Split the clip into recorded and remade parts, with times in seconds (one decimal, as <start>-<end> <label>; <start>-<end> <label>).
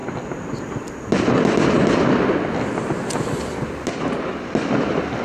0.0-5.2 recorded